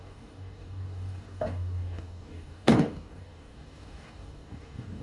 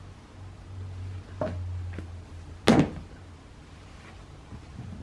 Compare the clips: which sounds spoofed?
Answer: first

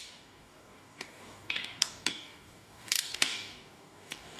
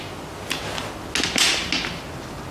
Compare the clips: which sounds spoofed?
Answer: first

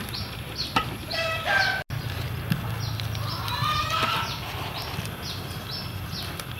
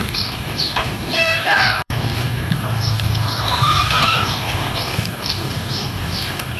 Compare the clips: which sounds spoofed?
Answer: second